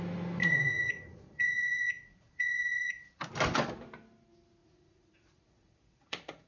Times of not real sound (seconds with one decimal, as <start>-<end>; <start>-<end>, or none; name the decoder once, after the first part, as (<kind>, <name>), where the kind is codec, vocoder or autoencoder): 0.4-3.3 (vocoder, Vocos); 4.6-6.5